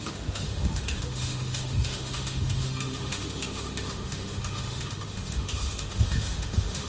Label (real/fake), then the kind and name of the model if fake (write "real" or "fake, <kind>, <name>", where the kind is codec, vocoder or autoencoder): fake, autoencoder, DAC-VAE